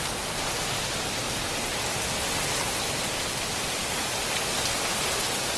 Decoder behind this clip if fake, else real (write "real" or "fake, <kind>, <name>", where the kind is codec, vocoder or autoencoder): real